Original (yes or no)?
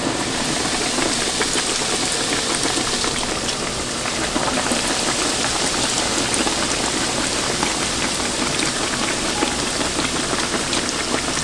yes